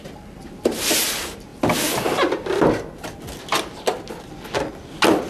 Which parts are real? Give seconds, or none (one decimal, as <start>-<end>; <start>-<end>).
0.0-5.3